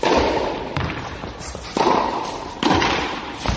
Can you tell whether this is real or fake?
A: real